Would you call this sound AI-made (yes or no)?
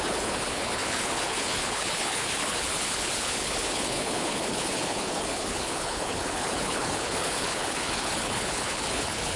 yes